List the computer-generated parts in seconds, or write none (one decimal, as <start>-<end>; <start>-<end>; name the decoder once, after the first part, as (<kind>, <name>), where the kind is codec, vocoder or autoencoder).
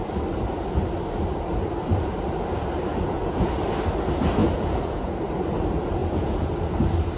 2.9-3.5 (vocoder, Vocos); 4.4-5.1; 6.0-6.5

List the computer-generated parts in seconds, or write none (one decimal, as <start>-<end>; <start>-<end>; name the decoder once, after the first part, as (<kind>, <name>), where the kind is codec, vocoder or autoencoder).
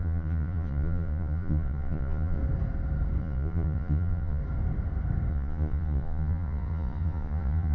0.0-2.4 (vocoder, Vocos); 3.2-4.4; 5.3-7.7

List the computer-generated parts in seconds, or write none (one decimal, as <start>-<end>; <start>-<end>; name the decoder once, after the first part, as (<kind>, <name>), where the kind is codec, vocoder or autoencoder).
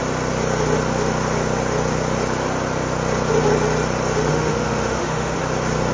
4.3-5.4 (autoencoder, DAC-VAE)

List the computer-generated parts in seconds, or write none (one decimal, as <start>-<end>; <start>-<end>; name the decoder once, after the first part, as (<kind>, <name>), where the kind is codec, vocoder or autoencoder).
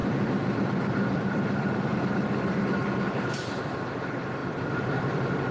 0.0-3.3 (vocoder, BigVGAN v2); 4.4-5.5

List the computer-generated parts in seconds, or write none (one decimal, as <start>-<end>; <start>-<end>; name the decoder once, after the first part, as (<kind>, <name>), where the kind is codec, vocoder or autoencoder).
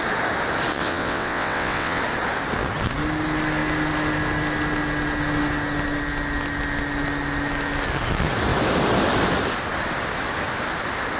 0.7-2.0 (vocoder, WaveNeXt)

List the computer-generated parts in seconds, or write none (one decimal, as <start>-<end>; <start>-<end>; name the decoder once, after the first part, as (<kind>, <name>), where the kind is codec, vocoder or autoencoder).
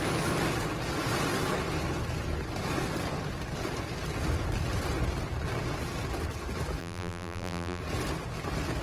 6.8-7.8 (vocoder, BigVGAN v2)